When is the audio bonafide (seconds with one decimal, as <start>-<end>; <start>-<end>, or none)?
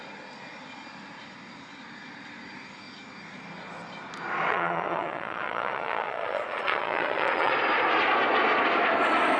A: 0.0-4.5; 7.5-9.4